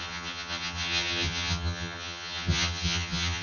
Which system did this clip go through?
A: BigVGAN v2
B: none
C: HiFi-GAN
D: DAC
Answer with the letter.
C